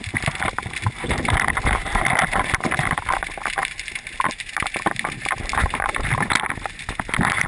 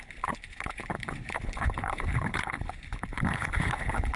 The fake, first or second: second